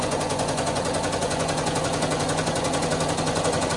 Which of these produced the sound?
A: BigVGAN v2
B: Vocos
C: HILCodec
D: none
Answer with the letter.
B